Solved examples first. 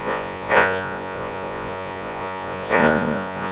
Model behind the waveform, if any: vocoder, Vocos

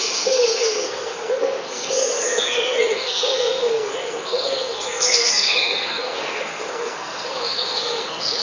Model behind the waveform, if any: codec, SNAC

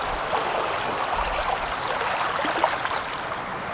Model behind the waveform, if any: none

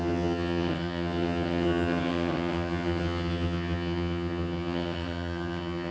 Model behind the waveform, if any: vocoder, HiFi-GAN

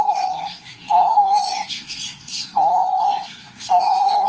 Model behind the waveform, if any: codec, SNAC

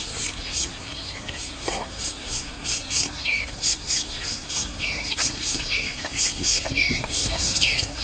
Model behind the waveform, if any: codec, SNAC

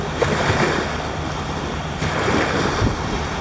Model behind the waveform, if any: none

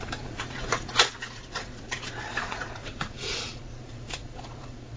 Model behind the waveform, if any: vocoder, Vocos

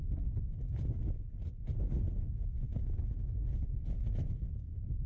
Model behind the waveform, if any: none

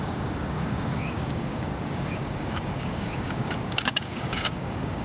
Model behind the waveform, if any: codec, DAC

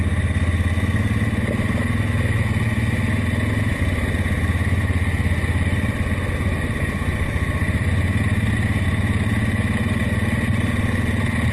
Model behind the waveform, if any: none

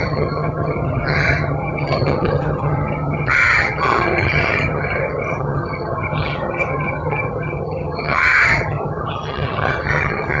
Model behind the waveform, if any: vocoder, HiFi-GAN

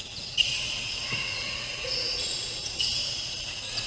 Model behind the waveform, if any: vocoder, Vocos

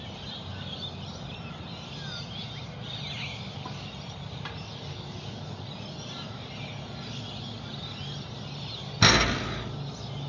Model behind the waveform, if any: none